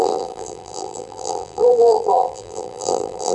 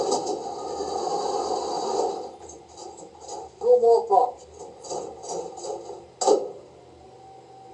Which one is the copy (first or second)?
first